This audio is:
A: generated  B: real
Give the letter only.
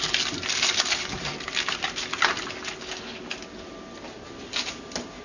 B